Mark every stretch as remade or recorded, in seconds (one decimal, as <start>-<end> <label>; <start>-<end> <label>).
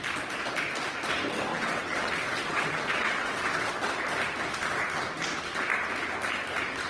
0.0-1.5 recorded; 1.5-3.9 remade; 3.9-6.9 recorded